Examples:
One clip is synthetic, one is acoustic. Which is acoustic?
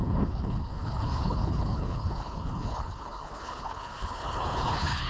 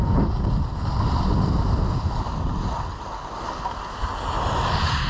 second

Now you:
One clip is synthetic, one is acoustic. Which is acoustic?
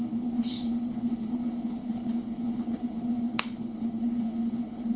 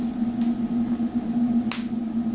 second